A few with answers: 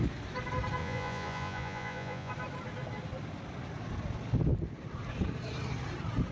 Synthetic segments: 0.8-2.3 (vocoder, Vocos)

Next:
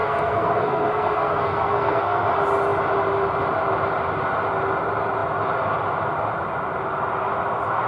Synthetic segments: 0.0-2.3 (codec, SNAC)

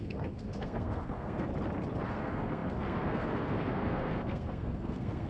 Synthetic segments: 0.0-1.5 (codec, SNAC); 2.1-5.3

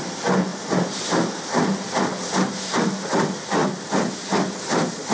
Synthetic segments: none

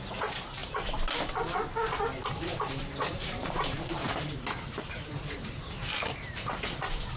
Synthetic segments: 0.6-1.3 (vocoder, BigVGAN v2); 2.8-7.2